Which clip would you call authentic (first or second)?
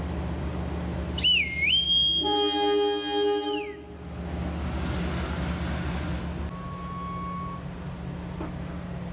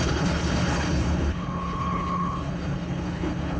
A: first